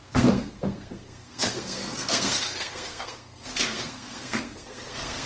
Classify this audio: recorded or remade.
remade